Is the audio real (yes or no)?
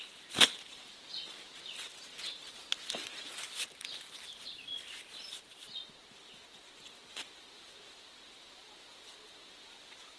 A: yes